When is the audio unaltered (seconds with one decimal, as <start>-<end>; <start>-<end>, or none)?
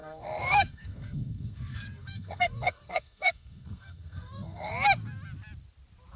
4.7-6.2